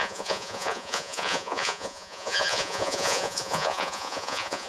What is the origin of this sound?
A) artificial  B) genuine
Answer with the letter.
A